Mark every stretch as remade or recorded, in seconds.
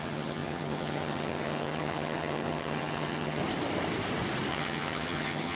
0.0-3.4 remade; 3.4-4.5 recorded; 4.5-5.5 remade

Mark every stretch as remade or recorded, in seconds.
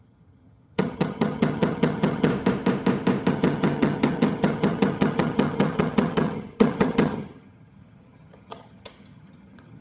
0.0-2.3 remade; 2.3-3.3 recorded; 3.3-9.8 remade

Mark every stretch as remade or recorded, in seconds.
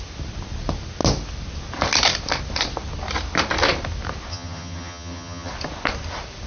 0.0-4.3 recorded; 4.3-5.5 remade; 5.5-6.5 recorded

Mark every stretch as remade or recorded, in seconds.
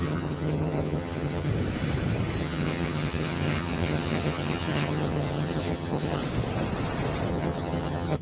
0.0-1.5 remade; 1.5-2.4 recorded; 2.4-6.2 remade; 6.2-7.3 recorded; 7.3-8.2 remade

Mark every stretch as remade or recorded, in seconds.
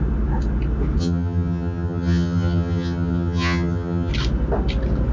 0.0-1.0 recorded; 1.0-4.1 remade; 4.1-5.1 recorded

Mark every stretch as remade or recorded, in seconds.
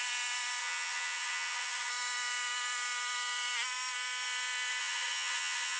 0.0-0.6 recorded; 0.6-1.9 remade; 1.9-4.8 recorded; 4.8-5.8 remade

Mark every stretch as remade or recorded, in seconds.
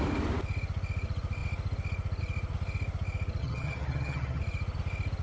0.0-3.4 recorded; 3.4-4.4 remade; 4.4-5.2 recorded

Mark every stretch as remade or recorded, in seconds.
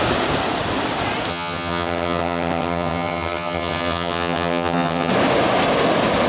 0.0-1.3 recorded; 1.3-5.1 remade; 5.1-6.3 recorded